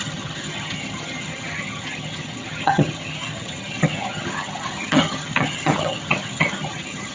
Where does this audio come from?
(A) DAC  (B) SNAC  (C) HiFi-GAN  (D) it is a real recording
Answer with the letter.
C